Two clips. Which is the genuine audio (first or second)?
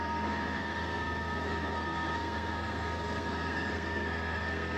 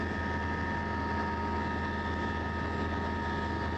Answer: second